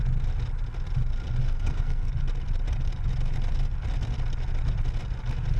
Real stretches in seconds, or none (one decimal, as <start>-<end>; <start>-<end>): 0.0-1.4; 2.1-5.6